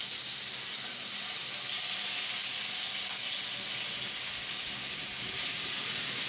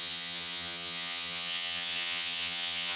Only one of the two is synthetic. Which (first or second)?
second